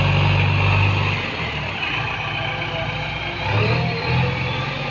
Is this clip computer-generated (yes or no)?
no